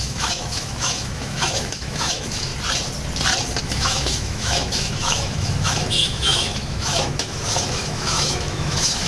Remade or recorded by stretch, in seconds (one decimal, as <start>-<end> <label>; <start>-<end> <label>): 0.0-2.5 remade; 2.5-3.6 recorded; 3.6-9.1 remade